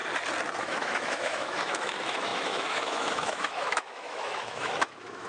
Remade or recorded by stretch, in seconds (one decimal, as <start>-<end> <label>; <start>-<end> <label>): 0.0-0.6 recorded; 0.6-5.3 remade